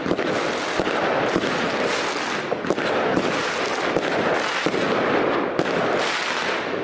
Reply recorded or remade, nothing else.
recorded